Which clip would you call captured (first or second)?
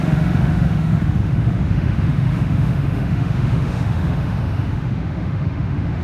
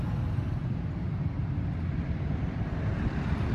second